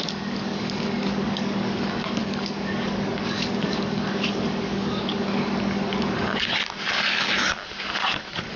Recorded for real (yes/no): no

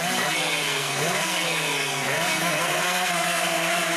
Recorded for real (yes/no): no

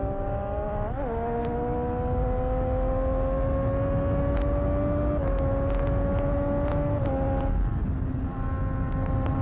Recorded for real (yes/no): yes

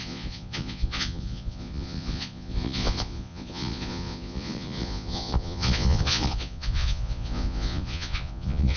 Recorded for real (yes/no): no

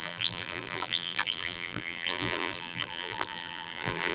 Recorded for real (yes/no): no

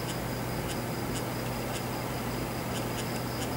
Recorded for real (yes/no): yes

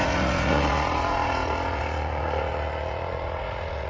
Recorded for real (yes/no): no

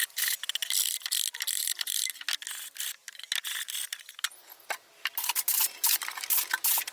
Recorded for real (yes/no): yes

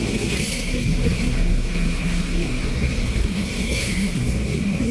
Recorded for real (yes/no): no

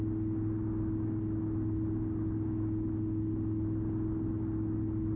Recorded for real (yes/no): yes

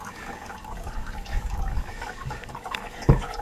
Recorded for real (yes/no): no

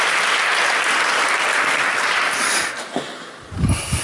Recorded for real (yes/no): yes